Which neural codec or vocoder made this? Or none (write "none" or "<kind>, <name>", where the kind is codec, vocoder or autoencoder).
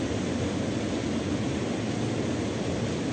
none